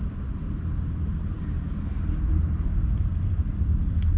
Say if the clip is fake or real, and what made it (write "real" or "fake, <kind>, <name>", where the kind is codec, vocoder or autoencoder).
real